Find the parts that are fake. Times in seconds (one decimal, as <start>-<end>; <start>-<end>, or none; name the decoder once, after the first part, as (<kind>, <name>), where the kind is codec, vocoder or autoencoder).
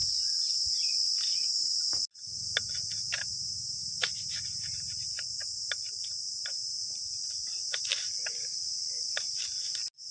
none